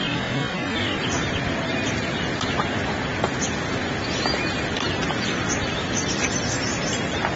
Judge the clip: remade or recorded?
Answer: recorded